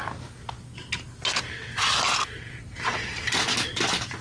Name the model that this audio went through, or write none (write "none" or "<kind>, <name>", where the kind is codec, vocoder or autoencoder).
none